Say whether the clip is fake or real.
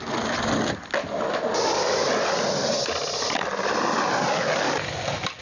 real